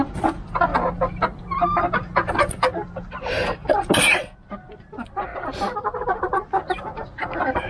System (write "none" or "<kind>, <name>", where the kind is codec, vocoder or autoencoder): none